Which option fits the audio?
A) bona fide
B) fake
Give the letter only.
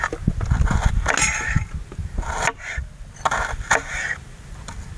A